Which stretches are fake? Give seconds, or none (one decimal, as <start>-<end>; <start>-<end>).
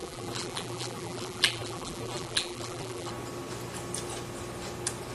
0.0-3.1